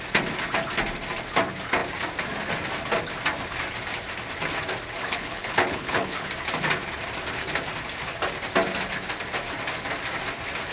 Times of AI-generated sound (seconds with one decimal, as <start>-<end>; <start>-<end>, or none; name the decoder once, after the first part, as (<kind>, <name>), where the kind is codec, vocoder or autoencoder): 5.0-6.3 (codec, HILCodec)